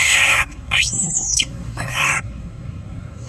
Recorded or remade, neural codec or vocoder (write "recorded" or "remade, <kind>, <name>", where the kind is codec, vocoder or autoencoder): remade, codec, SNAC